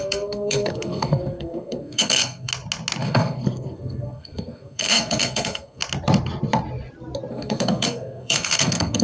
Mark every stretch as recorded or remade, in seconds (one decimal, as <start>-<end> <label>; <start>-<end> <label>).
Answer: 0.0-2.5 remade; 2.5-3.0 recorded; 3.0-5.8 remade; 5.8-7.3 recorded; 7.3-9.0 remade